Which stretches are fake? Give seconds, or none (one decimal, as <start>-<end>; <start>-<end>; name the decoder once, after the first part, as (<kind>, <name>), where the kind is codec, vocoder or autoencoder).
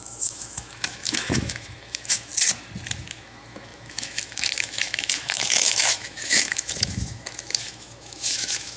0.0-2.3 (autoencoder, DAC-VAE); 3.0-8.8